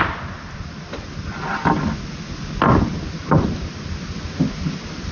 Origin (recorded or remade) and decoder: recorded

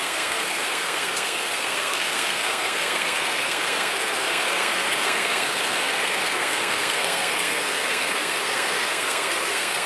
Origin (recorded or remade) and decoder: remade, codec, SNAC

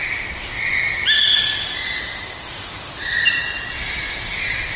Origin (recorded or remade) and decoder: recorded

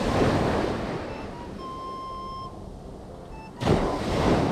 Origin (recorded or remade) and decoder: recorded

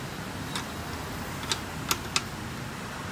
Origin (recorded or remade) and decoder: recorded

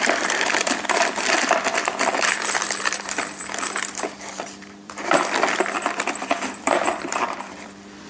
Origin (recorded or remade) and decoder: remade, vocoder, BigVGAN v2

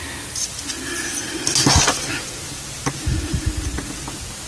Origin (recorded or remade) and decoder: recorded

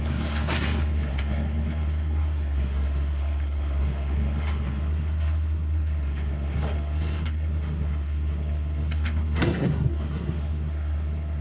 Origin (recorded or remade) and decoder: remade, codec, SNAC